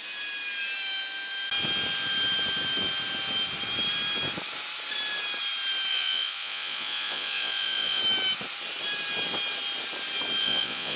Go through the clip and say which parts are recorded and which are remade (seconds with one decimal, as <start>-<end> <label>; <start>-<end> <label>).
0.0-5.9 recorded; 5.9-8.0 remade; 8.0-10.4 recorded; 10.4-11.0 remade